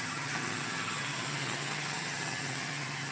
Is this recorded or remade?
remade